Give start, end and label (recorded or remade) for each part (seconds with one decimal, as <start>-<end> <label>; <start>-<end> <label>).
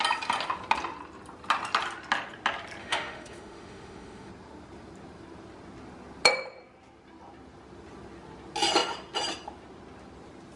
0.0-2.8 recorded; 2.8-4.3 remade; 4.3-10.6 recorded